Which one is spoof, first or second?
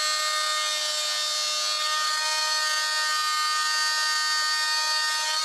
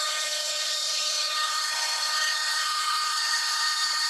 second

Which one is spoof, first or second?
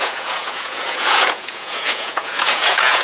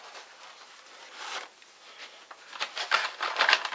first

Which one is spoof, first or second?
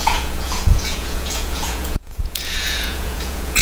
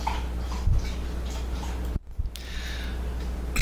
first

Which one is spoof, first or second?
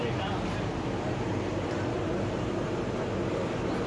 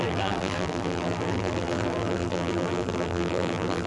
second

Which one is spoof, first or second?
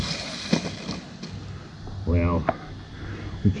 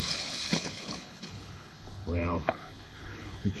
second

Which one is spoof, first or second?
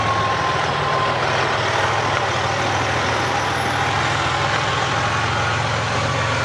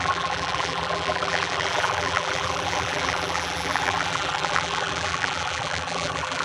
second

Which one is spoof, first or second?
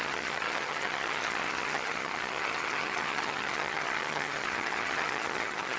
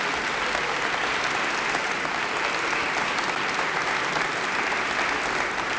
first